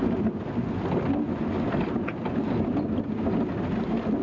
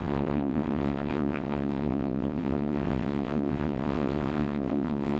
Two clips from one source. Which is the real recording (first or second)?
first